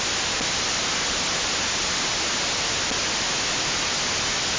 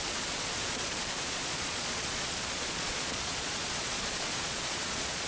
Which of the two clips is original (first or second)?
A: first